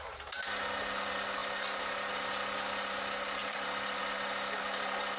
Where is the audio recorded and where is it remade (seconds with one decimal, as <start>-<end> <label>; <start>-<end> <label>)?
0.0-3.4 recorded; 3.4-4.0 remade; 4.0-5.2 recorded